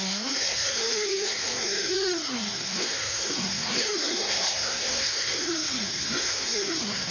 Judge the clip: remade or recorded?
remade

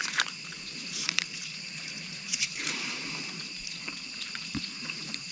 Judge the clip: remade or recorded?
remade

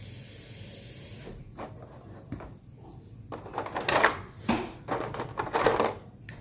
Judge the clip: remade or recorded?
recorded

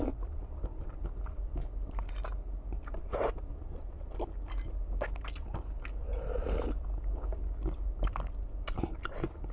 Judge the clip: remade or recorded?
recorded